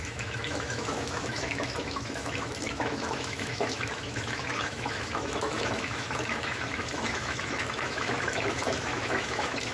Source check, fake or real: fake